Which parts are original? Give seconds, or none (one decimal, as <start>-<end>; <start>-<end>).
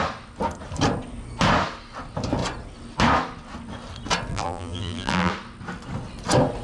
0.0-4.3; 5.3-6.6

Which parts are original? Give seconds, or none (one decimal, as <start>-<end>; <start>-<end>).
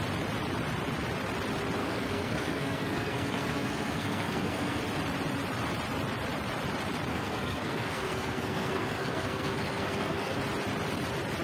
0.0-1.8; 4.8-7.1; 10.4-11.4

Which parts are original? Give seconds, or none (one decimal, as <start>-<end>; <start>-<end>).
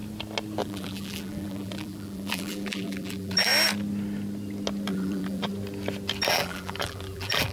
0.0-0.6; 3.5-4.9; 5.5-6.3